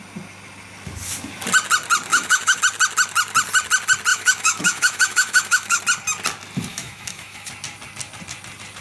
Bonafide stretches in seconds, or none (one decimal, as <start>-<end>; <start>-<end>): 0.0-2.1; 2.6-4.1; 5.8-6.7; 7.5-8.8